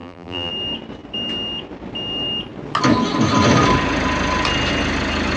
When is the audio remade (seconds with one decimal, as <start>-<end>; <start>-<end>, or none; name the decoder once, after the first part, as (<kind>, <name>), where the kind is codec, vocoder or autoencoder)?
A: 0.0-0.5 (vocoder, BigVGAN v2)